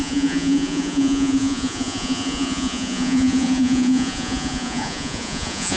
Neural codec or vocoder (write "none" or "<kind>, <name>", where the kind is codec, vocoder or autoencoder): vocoder, Vocos